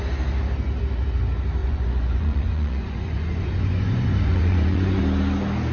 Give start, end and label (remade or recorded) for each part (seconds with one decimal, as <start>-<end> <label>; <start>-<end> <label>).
0.0-1.6 recorded; 1.6-5.0 remade; 5.0-5.7 recorded